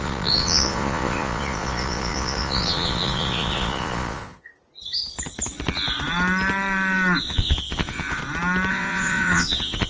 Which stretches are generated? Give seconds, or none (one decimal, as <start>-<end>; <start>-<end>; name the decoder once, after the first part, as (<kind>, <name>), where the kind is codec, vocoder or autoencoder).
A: 0.0-4.5 (vocoder, Vocos); 7.2-8.2; 8.7-9.9